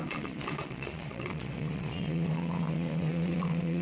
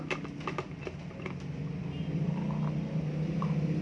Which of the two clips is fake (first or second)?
first